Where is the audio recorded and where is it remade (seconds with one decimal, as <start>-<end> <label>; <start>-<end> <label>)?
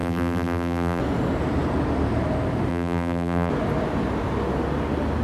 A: 0.0-1.0 remade; 1.0-2.7 recorded; 2.7-3.5 remade; 3.5-5.2 recorded